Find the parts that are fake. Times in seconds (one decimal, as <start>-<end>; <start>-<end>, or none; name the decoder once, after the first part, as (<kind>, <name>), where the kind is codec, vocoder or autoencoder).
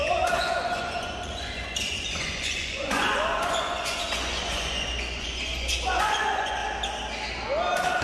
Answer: 0.0-6.6 (vocoder, Vocos)